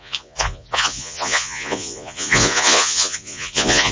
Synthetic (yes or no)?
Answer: yes